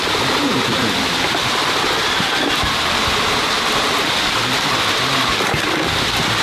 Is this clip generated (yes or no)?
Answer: no